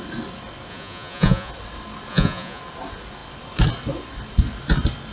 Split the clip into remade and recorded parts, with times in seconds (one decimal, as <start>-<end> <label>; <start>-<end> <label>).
0.0-0.7 recorded; 0.7-1.5 remade; 1.5-2.1 recorded; 2.1-2.6 remade; 2.6-5.1 recorded